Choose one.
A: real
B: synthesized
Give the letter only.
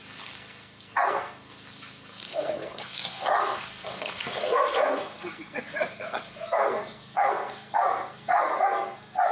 B